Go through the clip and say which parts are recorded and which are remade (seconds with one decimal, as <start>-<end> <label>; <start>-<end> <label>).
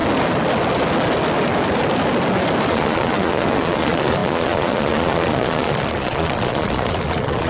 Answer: 0.0-2.7 recorded; 2.7-7.5 remade